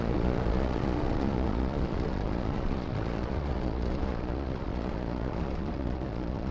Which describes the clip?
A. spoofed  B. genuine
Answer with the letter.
A